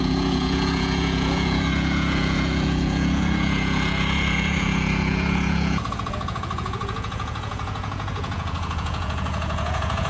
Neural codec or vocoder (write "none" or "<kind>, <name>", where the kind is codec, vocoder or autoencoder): vocoder, Vocos